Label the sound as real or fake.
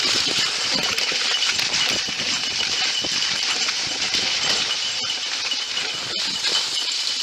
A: real